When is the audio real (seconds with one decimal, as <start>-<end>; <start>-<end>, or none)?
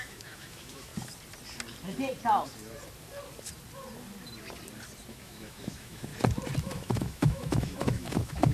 0.9-5.1; 6.1-6.6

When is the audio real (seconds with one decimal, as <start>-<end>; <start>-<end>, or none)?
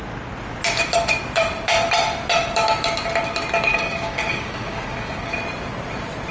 0.0-3.7; 5.3-6.3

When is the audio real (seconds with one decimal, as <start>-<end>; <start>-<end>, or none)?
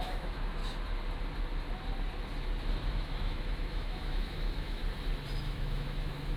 0.6-2.9; 4.8-5.4